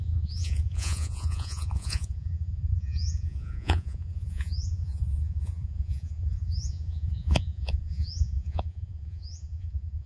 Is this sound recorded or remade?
remade